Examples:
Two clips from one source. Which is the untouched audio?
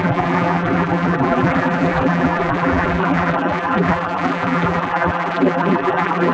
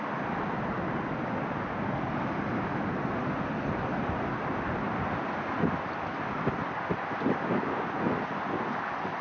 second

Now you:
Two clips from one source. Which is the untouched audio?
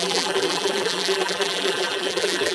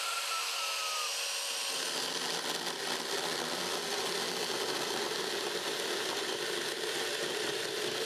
second